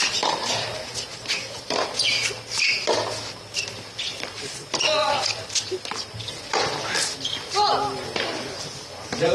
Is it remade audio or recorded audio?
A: recorded